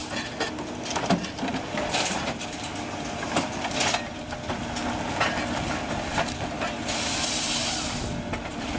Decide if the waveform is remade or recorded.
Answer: recorded